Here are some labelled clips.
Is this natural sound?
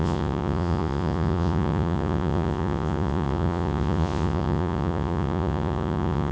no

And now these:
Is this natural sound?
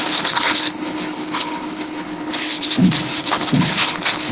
no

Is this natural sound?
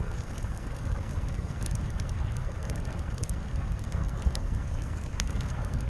no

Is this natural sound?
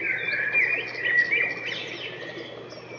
yes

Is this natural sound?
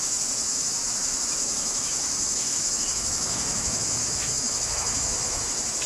no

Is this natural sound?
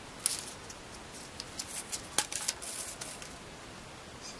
yes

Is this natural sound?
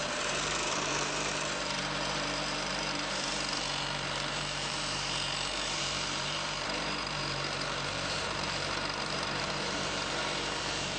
no